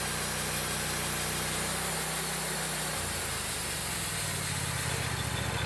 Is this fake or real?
real